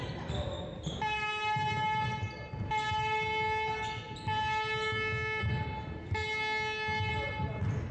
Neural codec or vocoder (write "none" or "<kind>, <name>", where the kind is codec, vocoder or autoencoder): none